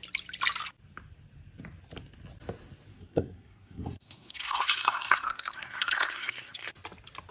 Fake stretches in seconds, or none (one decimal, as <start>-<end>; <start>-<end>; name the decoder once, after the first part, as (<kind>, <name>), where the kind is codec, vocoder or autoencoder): 2.9-6.7 (codec, SNAC)